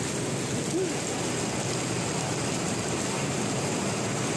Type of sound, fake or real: real